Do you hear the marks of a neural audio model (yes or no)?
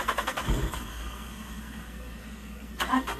yes